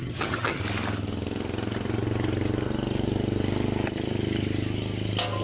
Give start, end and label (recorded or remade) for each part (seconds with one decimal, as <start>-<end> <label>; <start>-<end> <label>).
0.0-0.6 remade; 0.6-5.4 recorded